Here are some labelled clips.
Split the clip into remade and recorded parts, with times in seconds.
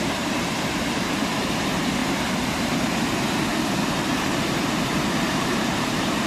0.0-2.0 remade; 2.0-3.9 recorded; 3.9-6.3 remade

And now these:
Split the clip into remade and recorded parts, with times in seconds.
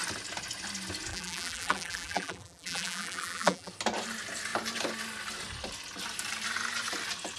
0.0-1.1 recorded; 1.1-3.7 remade; 3.7-7.4 recorded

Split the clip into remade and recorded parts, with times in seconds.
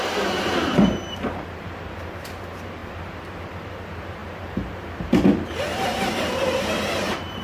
0.0-7.4 remade